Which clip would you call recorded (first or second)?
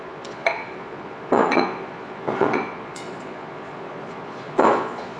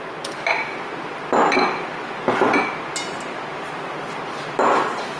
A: second